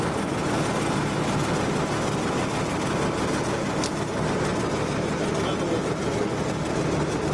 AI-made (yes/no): no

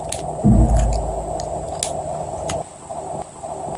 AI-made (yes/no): no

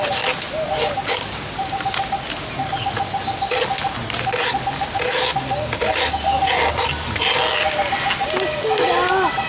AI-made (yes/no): no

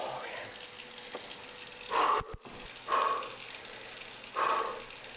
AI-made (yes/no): no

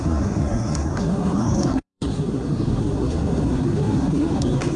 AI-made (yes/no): yes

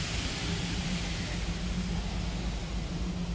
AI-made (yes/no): no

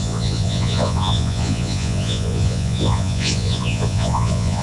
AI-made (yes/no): yes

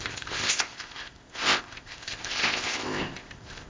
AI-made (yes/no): yes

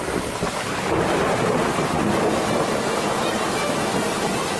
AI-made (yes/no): no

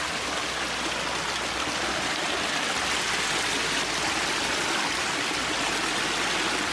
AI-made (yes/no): no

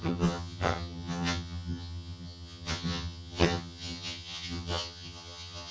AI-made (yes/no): yes